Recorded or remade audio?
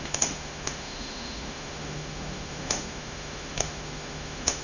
remade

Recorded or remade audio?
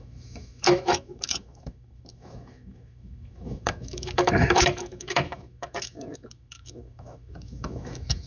remade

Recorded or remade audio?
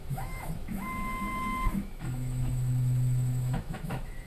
remade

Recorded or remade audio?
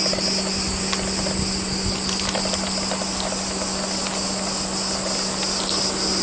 recorded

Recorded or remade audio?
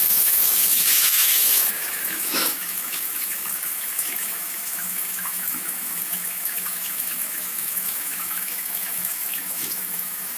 remade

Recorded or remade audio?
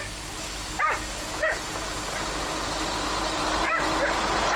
recorded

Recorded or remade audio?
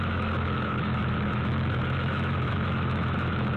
remade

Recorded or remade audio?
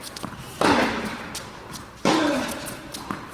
recorded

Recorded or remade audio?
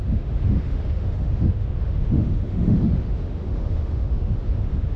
remade